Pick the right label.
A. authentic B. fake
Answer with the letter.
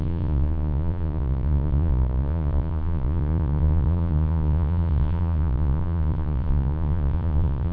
B